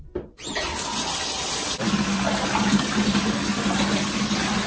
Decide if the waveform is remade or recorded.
recorded